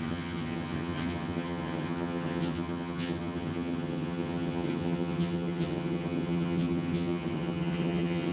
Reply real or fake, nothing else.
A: fake